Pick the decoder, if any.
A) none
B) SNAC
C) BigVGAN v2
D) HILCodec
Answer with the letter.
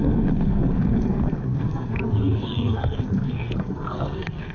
B